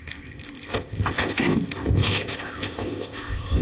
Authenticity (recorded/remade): remade